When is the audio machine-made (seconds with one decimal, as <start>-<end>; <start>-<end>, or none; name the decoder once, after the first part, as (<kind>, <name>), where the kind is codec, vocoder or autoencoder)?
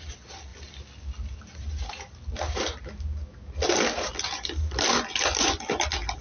none